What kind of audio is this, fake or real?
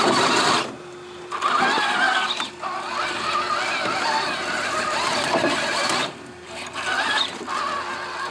fake